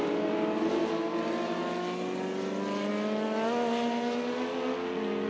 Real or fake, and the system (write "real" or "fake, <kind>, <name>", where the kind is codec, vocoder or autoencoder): real